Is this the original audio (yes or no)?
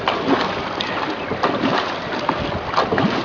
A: yes